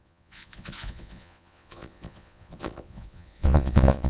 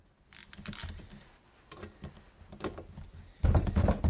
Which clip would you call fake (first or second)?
first